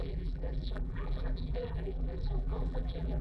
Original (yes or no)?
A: no